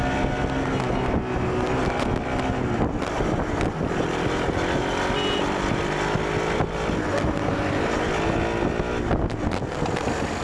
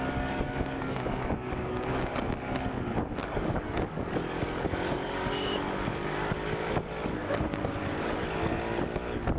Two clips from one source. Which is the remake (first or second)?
second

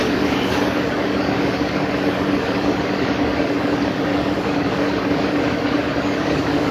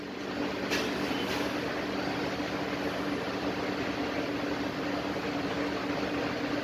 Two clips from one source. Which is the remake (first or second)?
first